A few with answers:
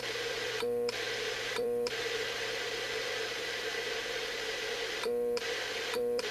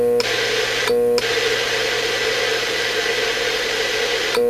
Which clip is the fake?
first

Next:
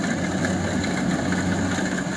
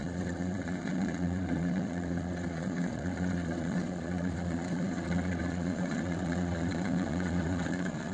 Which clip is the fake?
second